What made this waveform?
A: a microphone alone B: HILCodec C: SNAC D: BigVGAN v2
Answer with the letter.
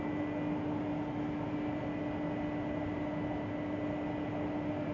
A